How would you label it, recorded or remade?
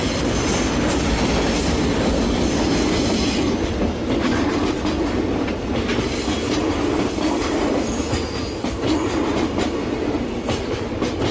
recorded